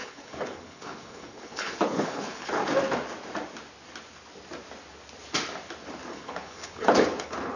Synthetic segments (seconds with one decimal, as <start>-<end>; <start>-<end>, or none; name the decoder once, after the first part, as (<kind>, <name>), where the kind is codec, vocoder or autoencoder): 0.0-2.6 (codec, HILCodec); 6.1-7.6